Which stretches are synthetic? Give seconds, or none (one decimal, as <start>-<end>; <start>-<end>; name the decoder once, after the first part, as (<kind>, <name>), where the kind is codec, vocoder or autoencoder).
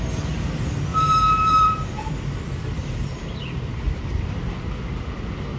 0.9-4.3 (vocoder, BigVGAN v2)